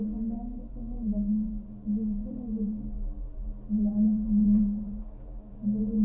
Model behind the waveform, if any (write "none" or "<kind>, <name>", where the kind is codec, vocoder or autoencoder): vocoder, Vocos